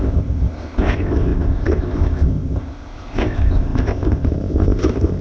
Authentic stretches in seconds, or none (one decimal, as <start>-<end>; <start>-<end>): none